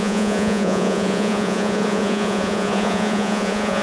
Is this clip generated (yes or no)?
yes